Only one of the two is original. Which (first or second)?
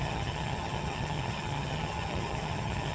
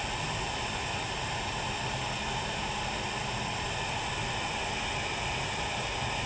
second